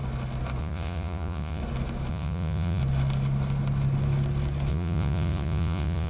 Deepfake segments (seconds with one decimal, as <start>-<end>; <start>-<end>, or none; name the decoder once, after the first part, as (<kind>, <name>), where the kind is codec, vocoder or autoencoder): 0.6-1.6 (vocoder, Vocos); 2.1-2.8; 4.7-6.1